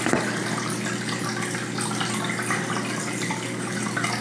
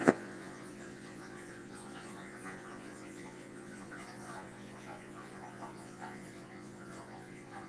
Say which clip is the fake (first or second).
second